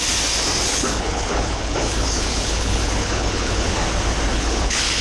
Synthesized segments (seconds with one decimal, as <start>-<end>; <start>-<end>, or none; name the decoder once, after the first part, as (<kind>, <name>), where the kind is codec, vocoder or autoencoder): 0.7-3.7 (codec, HILCodec); 4.3-5.0